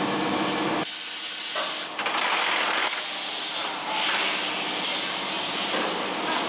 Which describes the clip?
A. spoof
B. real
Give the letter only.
B